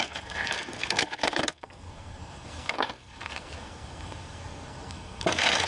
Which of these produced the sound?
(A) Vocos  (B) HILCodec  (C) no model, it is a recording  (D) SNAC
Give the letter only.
D